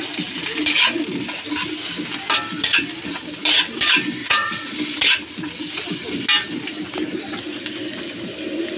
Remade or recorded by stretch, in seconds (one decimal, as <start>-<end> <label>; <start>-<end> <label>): 0.0-4.2 recorded; 4.2-4.7 remade; 4.7-8.8 recorded

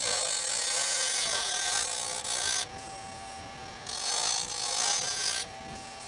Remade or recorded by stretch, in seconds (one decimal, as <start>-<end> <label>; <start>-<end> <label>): 0.0-6.1 recorded